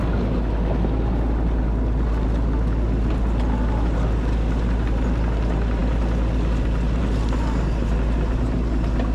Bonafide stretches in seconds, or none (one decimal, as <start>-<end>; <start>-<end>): 0.0-9.1